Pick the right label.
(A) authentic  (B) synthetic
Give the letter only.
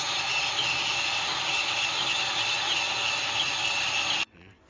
A